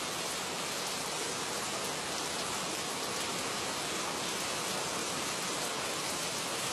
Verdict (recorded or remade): recorded